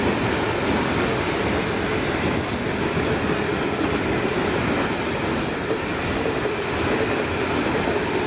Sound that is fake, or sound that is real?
real